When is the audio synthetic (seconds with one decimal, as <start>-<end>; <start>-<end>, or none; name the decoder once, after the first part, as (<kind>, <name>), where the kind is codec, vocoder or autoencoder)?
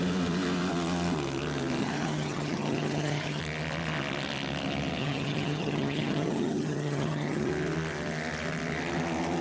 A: 1.8-3.4 (vocoder, HiFi-GAN); 5.0-7.5